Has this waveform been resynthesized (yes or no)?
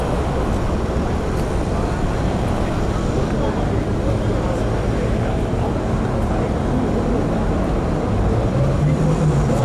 no